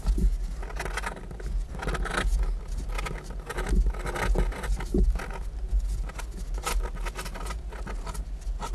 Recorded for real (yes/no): yes